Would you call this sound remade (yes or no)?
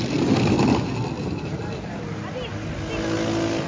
no